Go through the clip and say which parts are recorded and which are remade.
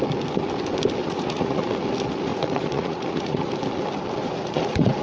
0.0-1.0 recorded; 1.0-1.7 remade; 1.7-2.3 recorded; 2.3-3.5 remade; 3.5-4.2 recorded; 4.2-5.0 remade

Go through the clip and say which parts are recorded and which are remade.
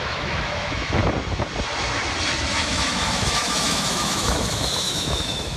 0.0-1.0 remade; 1.0-2.5 recorded; 2.5-5.6 remade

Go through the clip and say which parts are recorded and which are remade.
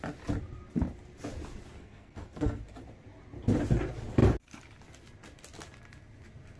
0.0-1.8 recorded; 1.8-2.6 remade; 2.6-6.6 recorded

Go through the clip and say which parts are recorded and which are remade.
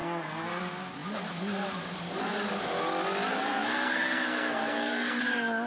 0.0-0.6 remade; 0.6-3.3 recorded; 3.3-5.2 remade; 5.2-5.7 recorded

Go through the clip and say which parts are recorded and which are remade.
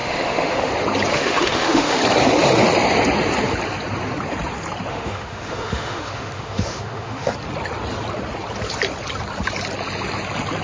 0.0-0.7 remade; 0.7-1.1 recorded; 1.1-2.0 remade; 2.0-4.9 recorded; 4.9-7.3 remade; 7.3-10.6 recorded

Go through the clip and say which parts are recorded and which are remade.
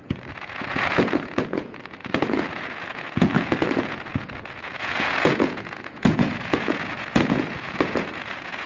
0.0-8.7 remade